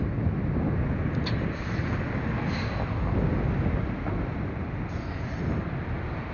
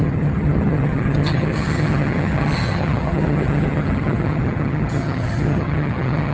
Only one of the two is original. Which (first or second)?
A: first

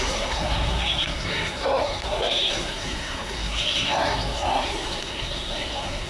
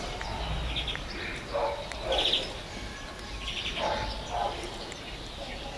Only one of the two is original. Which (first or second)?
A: second